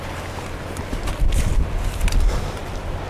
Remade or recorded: recorded